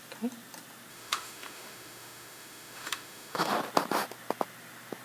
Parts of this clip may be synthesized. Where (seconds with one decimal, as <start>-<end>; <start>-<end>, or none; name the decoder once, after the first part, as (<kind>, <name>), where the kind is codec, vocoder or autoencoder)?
0.9-3.5 (autoencoder, DAC-VAE)